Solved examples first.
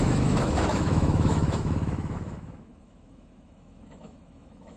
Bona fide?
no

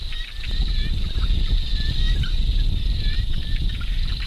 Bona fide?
no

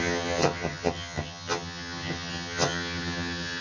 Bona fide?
no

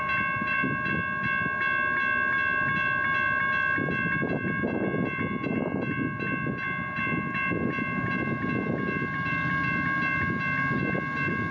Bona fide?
yes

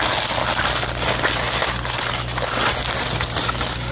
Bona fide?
yes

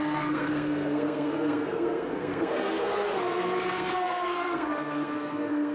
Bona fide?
no